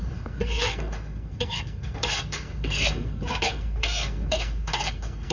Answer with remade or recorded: remade